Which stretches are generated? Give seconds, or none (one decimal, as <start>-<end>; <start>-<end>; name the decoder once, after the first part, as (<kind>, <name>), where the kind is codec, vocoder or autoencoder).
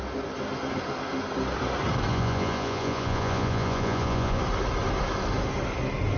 2.1-4.4 (vocoder, Vocos)